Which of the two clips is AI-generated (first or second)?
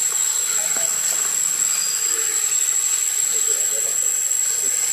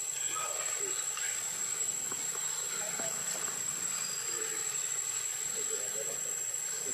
second